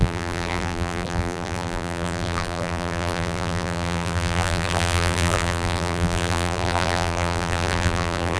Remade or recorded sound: remade